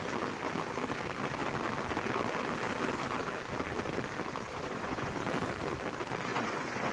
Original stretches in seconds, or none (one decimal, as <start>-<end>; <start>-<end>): 0.0-4.5; 5.1-6.3